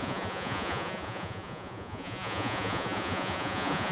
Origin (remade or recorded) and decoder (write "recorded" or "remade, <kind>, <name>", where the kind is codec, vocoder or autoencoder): remade, vocoder, Vocos